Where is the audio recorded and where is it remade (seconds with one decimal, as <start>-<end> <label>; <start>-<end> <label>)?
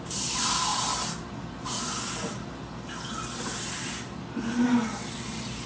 0.0-5.7 recorded